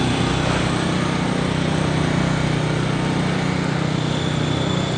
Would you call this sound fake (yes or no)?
no